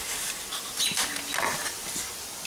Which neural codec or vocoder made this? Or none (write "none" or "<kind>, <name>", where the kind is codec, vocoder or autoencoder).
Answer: none